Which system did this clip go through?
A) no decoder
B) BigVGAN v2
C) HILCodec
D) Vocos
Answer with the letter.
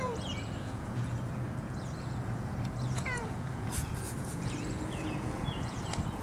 D